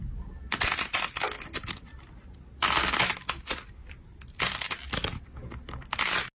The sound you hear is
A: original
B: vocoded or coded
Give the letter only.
A